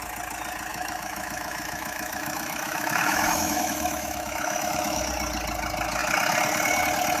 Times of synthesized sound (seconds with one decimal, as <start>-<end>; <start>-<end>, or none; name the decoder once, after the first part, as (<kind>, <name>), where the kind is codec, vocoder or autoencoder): 0.7-5.0 (autoencoder, DAC-VAE)